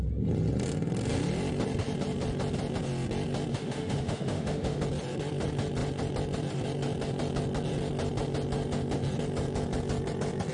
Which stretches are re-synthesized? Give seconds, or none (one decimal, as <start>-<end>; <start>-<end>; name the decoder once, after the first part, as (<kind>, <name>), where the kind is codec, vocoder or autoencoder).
3.5-4.8 (autoencoder, DAC-VAE)